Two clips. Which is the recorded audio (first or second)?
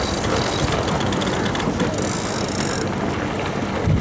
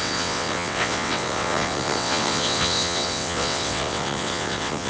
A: first